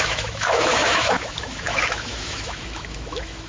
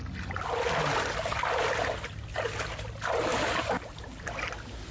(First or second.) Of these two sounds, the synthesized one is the first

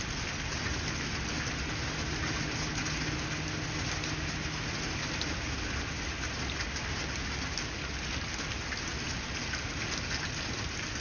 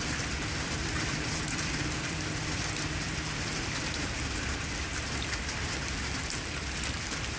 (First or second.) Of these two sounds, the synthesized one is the second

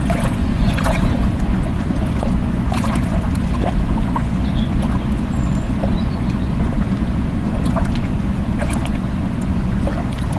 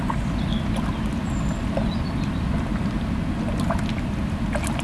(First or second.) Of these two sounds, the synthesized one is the first